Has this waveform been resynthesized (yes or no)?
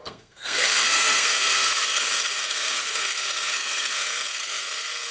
yes